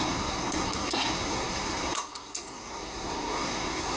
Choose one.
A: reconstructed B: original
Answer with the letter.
A